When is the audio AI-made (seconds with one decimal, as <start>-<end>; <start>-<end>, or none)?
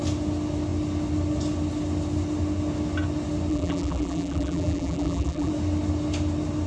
3.5-5.5